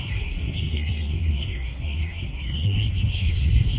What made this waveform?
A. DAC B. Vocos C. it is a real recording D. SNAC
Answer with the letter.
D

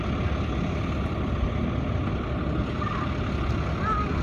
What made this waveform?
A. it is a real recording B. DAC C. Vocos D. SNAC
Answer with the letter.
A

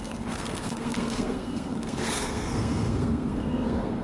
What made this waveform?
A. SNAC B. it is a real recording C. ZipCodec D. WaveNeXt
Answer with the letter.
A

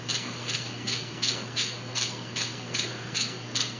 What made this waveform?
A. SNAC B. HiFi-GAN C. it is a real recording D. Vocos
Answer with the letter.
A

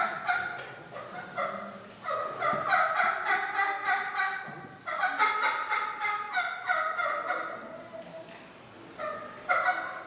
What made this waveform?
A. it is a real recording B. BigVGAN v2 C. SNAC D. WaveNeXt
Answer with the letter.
A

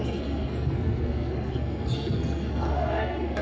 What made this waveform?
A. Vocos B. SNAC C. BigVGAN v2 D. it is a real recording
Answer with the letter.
B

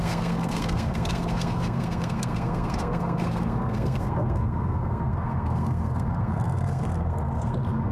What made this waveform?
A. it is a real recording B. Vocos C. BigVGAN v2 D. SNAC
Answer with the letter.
D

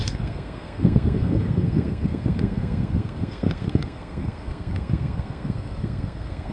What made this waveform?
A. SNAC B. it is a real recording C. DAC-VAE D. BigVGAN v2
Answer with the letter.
A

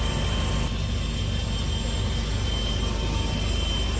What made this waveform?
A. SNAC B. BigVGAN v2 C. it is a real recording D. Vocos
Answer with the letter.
C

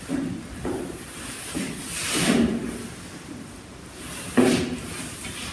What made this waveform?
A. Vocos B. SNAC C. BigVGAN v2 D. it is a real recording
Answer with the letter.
D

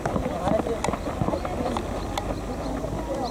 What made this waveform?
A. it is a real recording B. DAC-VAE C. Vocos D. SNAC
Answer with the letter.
A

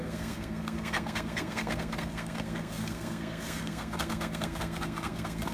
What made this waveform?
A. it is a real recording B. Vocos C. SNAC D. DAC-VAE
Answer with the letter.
C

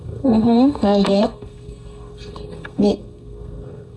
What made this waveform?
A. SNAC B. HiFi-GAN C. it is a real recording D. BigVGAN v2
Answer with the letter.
A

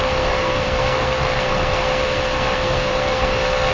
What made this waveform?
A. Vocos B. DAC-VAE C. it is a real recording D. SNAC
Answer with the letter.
D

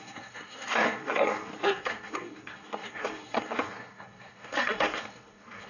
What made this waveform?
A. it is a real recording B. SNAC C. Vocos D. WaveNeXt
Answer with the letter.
B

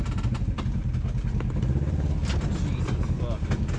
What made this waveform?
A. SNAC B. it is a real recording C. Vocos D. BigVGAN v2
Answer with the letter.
B